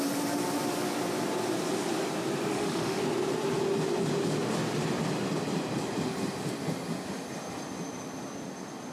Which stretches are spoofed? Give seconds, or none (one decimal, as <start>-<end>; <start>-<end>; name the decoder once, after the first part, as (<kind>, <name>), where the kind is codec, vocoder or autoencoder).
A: 2.5-3.0 (autoencoder, DAC-VAE)